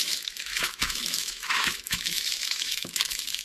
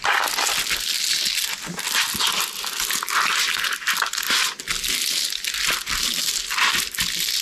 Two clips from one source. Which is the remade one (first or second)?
first